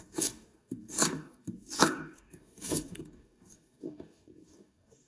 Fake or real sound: fake